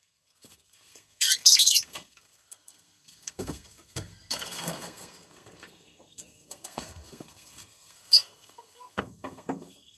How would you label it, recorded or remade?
remade